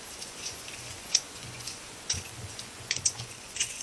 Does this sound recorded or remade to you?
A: remade